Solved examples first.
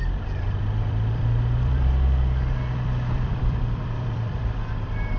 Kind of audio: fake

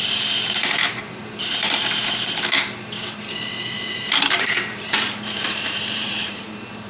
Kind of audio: fake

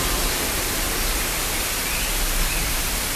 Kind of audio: real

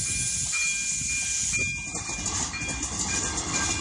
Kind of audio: real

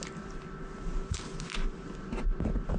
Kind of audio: real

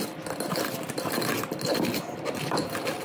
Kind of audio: real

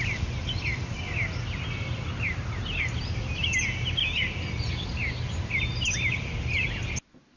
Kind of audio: real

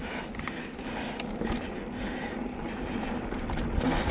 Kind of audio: real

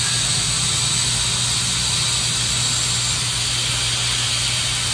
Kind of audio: real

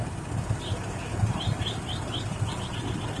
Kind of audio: real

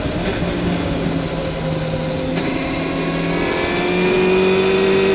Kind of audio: real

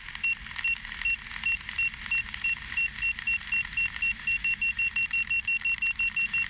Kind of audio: real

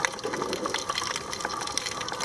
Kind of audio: real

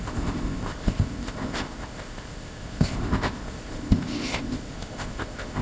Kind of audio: fake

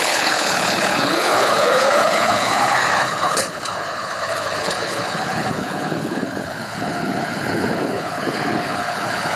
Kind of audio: fake